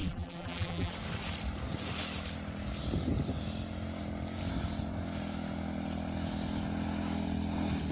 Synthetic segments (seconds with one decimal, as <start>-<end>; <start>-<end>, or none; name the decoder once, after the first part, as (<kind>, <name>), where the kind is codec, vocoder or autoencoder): 0.0-0.9 (vocoder, BigVGAN v2)